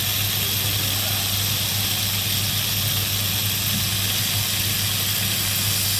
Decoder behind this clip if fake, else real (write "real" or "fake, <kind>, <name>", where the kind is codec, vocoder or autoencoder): real